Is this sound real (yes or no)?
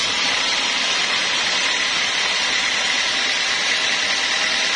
yes